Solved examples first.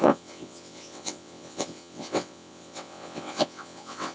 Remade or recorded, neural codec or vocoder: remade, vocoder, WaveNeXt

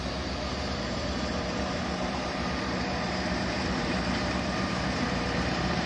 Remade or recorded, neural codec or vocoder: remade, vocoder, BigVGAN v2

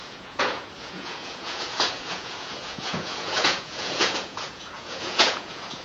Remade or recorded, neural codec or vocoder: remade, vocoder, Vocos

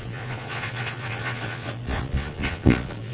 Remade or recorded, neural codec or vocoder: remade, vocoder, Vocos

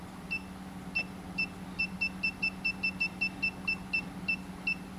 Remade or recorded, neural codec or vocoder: recorded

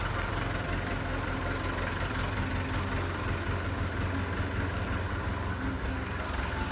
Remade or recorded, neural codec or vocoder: recorded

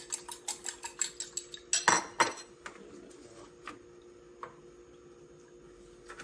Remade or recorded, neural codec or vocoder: recorded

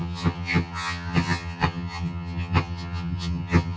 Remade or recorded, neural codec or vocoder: remade, vocoder, HiFi-GAN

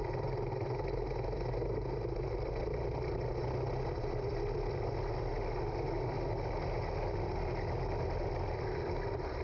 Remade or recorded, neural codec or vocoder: recorded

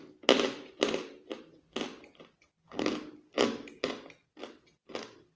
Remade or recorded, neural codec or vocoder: recorded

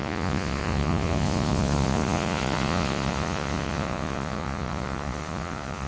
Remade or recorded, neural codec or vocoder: remade, vocoder, Vocos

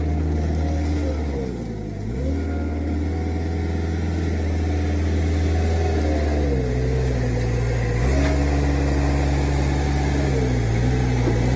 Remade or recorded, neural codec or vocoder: recorded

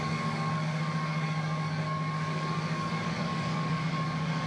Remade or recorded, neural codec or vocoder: remade, codec, DAC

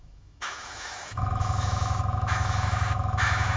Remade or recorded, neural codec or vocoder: remade, autoencoder, DAC-VAE